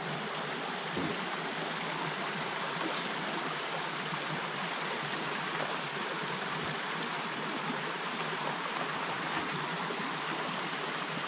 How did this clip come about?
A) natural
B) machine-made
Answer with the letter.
A